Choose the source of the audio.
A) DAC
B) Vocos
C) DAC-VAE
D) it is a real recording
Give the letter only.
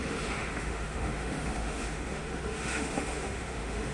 C